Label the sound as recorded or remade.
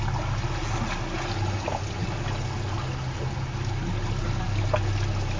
recorded